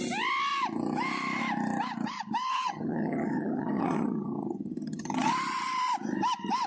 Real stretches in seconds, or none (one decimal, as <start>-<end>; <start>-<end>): 0.0-2.5; 5.3-6.7